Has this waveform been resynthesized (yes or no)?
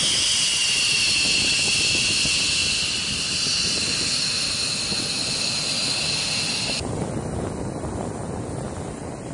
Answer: no